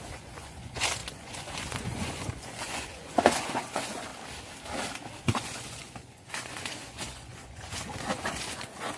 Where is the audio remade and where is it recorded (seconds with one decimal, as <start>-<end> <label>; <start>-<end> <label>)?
0.0-4.1 remade; 4.1-5.2 recorded; 5.2-9.0 remade